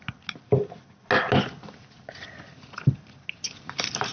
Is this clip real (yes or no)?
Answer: yes